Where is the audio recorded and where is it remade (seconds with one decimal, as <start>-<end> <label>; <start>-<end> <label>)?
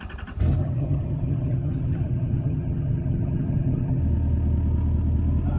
0.0-0.6 recorded; 0.6-4.0 remade; 4.0-5.6 recorded